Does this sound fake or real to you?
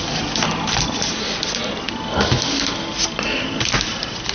real